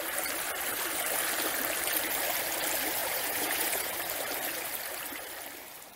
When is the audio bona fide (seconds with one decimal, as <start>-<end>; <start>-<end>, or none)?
0.0-3.0; 3.9-6.0